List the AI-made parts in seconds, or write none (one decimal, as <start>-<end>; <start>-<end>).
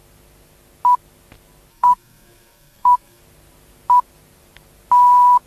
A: 1.7-3.2